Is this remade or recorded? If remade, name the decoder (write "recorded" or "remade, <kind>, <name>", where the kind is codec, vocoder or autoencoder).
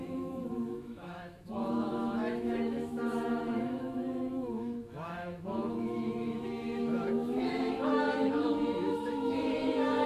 remade, autoencoder, DAC-VAE